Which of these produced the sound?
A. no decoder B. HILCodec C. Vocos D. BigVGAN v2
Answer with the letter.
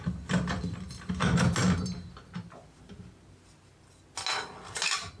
A